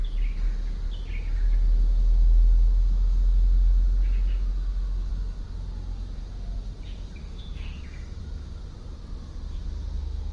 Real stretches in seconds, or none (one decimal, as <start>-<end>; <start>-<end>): 0.0-7.2; 7.8-10.3